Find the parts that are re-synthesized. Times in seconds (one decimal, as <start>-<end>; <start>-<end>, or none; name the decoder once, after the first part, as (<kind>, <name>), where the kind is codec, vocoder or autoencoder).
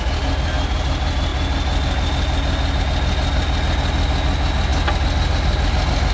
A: none